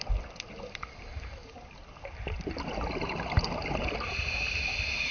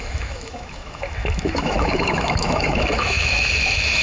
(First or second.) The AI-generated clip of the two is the second